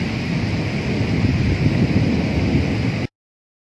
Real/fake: real